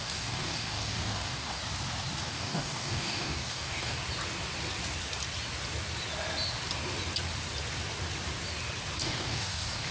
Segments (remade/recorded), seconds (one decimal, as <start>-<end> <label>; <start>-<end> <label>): 0.0-1.6 remade; 1.6-2.2 recorded; 2.2-4.0 remade; 4.0-9.0 recorded; 9.0-9.9 remade